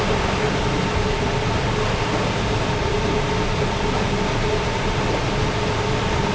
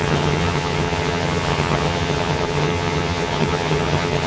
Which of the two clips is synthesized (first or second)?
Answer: second